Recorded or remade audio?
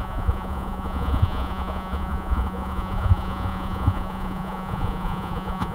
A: remade